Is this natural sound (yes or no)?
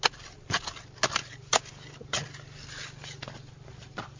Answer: yes